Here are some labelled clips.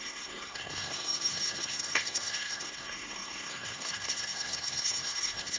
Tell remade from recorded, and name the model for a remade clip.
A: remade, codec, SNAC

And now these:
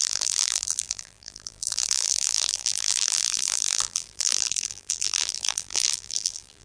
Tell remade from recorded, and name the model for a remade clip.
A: remade, vocoder, BigVGAN v2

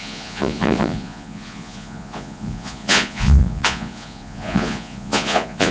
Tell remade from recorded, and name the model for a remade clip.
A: remade, vocoder, Vocos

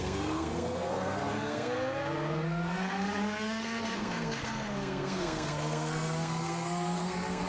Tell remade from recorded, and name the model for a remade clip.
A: remade, codec, SNAC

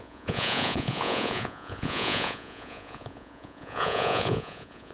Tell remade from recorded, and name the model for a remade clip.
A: remade, vocoder, Vocos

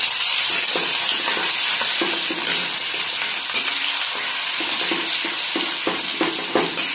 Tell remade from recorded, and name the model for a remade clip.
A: remade, vocoder, BigVGAN v2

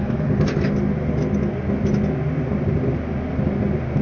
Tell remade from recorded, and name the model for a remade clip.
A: recorded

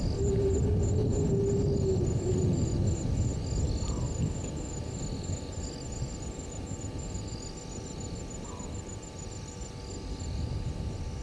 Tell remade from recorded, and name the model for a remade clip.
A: recorded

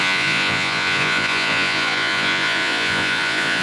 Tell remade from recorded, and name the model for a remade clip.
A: remade, vocoder, Vocos